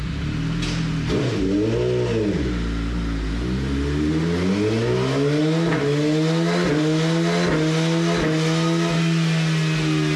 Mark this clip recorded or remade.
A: recorded